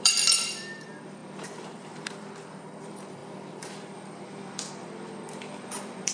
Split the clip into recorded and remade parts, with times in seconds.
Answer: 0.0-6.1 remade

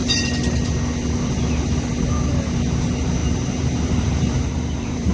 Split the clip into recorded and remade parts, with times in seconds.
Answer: 0.0-2.3 recorded; 2.3-5.1 remade

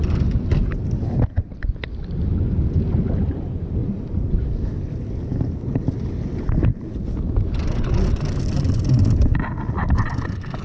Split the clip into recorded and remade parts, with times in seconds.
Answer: 0.0-3.8 recorded; 3.8-4.8 remade; 4.8-10.6 recorded